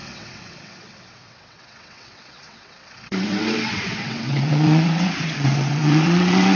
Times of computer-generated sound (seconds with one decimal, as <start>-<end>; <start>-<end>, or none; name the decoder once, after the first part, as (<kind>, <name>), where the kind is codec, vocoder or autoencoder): 0.0-6.5 (vocoder, WaveNeXt)